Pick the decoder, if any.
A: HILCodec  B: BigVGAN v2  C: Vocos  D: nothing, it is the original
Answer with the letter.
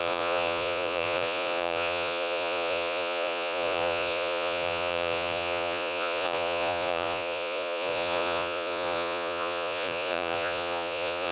C